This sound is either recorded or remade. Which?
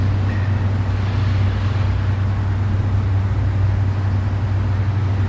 recorded